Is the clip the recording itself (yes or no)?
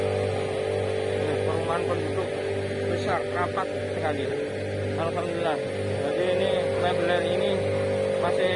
yes